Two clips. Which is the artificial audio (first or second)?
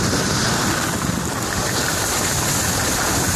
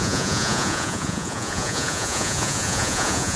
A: second